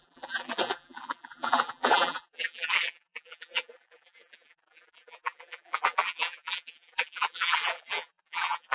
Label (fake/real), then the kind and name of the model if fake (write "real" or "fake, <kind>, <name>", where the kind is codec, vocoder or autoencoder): fake, vocoder, BigVGAN v2